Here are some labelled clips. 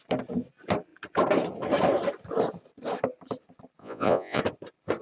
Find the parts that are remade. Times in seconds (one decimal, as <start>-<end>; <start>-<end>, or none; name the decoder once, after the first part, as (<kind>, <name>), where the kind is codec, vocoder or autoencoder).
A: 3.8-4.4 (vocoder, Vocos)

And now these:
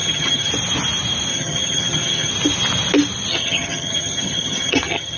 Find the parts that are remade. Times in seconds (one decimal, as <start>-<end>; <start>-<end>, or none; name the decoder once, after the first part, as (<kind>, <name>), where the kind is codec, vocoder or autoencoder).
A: 0.0-0.5 (vocoder, HiFi-GAN); 1.3-2.3; 3.3-5.2

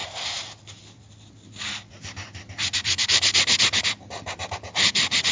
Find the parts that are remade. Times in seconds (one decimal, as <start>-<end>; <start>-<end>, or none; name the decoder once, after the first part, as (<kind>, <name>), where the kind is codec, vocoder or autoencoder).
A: none

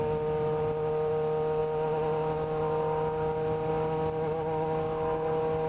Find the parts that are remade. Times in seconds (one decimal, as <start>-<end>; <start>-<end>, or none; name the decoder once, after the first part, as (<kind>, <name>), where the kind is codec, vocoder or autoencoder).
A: none

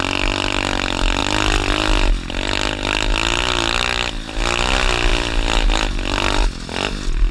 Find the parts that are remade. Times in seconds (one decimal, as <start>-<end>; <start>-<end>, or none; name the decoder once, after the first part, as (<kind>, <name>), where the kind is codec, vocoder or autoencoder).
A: none

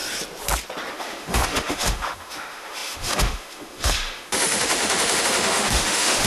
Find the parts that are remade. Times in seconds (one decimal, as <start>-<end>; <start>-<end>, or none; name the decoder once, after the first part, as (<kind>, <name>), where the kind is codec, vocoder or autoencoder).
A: 0.9-6.3 (autoencoder, DAC-VAE)

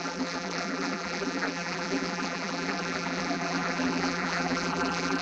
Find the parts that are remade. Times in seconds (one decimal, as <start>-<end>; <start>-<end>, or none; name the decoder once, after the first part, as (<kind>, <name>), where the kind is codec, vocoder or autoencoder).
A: 0.0-5.2 (vocoder, BigVGAN v2)